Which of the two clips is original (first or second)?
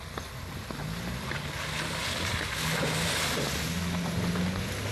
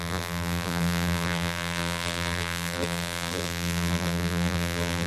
first